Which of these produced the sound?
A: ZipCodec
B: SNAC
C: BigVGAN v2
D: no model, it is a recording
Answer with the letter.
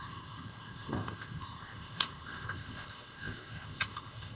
A